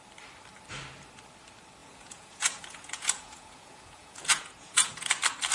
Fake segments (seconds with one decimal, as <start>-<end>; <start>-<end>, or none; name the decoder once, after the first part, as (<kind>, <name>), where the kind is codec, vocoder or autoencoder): 1.8-5.1 (vocoder, Vocos)